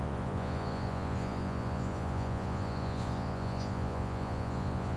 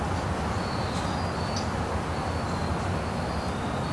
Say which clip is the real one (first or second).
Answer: second